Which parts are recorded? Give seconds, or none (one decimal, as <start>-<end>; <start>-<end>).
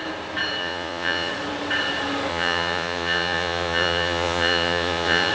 0.0-0.6; 1.3-2.3